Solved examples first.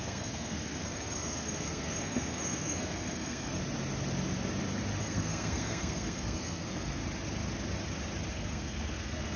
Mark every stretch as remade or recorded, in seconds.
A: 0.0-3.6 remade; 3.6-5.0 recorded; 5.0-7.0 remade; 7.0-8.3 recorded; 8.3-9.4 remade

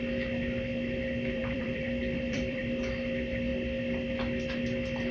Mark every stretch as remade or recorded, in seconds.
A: 0.0-1.4 recorded; 1.4-2.6 remade; 2.6-5.1 recorded

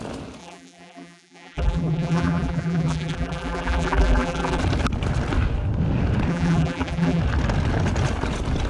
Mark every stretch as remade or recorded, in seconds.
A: 0.0-0.4 recorded; 0.4-4.6 remade; 4.6-6.3 recorded; 6.3-7.2 remade; 7.2-8.7 recorded

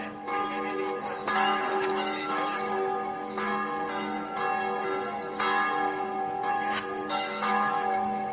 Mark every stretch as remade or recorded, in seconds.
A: 0.0-3.5 remade; 3.5-6.5 recorded; 6.5-8.3 remade

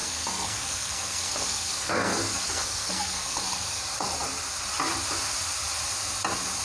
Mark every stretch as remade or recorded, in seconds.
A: 0.0-3.8 remade; 3.8-6.6 recorded

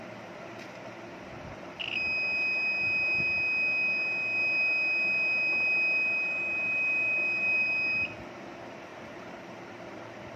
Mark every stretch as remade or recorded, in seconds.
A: 0.0-8.9 recorded; 8.9-10.4 remade